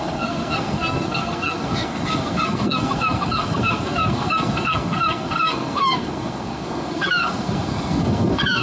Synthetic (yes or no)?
yes